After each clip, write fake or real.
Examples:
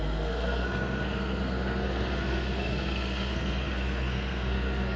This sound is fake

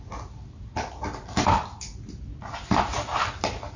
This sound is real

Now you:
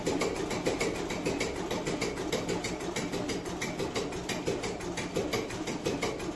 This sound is real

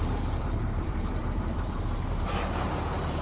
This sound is fake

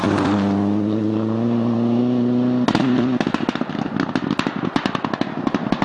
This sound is real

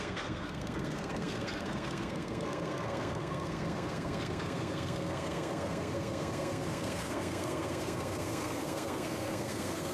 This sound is fake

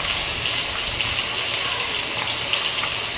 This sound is real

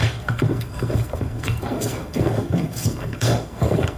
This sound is fake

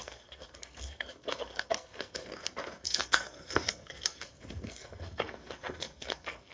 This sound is fake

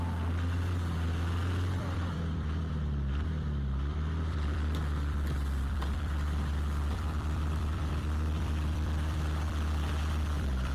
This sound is fake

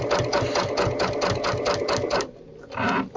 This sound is real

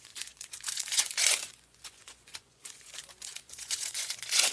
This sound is fake